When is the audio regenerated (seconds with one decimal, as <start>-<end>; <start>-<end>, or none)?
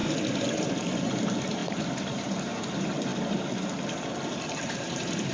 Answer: 0.6-3.1; 4.3-5.3